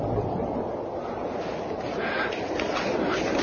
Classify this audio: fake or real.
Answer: real